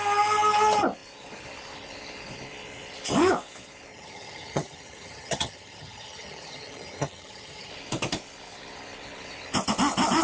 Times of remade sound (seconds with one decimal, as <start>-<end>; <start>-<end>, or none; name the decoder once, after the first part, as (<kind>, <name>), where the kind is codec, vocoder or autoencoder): 3.9-7.7 (vocoder, HiFi-GAN)